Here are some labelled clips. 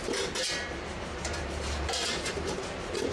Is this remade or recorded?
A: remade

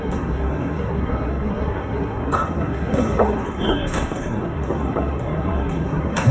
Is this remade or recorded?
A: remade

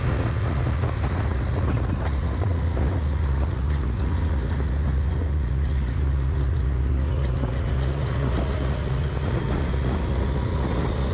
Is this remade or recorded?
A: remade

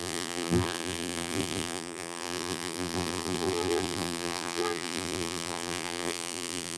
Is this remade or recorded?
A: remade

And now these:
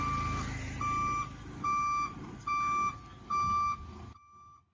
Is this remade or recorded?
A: recorded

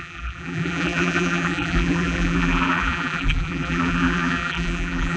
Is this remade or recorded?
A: remade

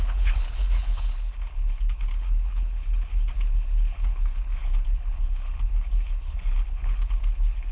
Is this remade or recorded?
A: remade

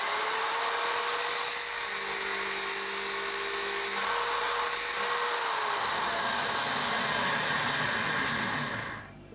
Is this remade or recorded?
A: recorded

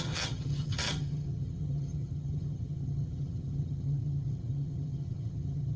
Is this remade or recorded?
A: remade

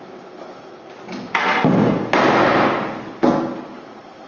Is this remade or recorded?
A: recorded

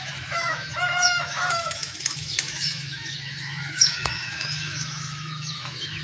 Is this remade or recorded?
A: remade